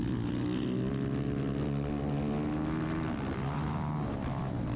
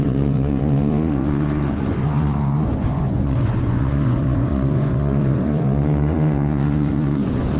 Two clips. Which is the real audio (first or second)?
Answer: first